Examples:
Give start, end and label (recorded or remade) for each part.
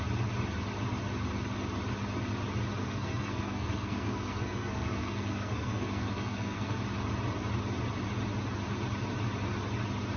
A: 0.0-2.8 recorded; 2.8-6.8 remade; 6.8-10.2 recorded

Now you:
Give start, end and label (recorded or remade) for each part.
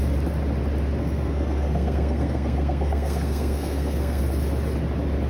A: 0.0-1.0 recorded; 1.0-4.2 remade; 4.2-5.3 recorded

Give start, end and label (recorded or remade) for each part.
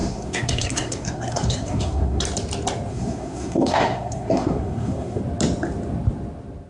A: 0.0-2.2 remade; 2.2-2.9 recorded; 2.9-5.2 remade; 5.2-6.7 recorded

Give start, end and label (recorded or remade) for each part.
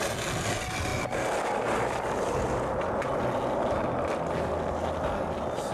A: 0.0-5.7 recorded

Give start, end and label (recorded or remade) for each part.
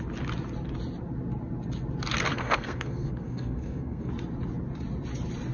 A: 0.0-2.3 recorded; 2.3-4.1 remade; 4.1-5.5 recorded